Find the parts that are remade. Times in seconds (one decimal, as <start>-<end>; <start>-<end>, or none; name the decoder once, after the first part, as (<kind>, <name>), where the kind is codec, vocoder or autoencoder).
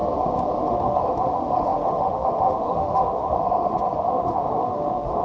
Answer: 0.6-5.2 (autoencoder, DAC-VAE)